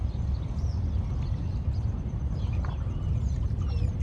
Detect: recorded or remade recorded